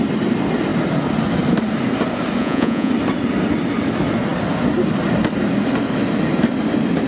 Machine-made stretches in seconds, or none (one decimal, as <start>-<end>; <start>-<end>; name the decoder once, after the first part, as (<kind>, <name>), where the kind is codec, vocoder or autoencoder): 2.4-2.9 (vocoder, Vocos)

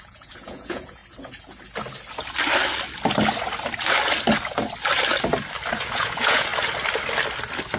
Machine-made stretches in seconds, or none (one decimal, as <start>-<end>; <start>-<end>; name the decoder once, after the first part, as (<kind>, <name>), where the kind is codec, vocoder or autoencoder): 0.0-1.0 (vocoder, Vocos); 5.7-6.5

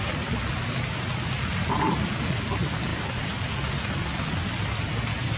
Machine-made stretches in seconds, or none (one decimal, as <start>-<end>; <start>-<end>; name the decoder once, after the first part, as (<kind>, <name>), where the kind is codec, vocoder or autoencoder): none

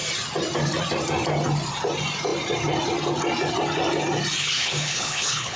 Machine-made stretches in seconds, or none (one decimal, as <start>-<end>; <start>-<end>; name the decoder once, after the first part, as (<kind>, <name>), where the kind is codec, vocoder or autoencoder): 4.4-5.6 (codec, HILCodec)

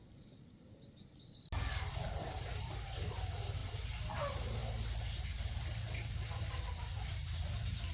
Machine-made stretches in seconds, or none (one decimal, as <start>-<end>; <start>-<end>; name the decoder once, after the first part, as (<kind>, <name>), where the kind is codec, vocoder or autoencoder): none